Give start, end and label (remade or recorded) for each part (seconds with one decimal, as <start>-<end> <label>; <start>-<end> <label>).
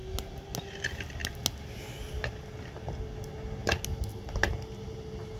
0.0-5.4 recorded